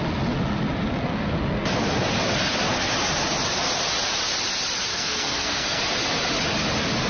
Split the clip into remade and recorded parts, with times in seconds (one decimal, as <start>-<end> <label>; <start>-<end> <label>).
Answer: 0.0-4.9 recorded; 4.9-5.8 remade; 5.8-7.1 recorded